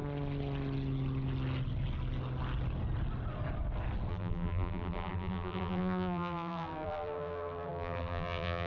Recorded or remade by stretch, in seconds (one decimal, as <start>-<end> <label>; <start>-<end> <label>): 0.0-4.1 recorded; 4.1-8.7 remade